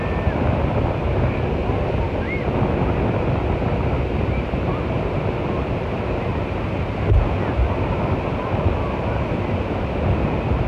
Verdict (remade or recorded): recorded